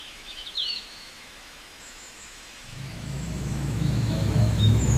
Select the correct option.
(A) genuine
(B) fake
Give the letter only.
B